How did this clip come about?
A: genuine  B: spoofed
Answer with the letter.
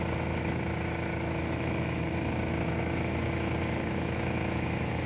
B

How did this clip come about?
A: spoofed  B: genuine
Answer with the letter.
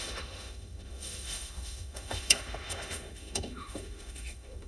A